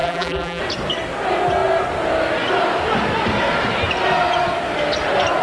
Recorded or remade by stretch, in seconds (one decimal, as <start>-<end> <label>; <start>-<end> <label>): 0.0-0.6 remade; 0.6-5.4 recorded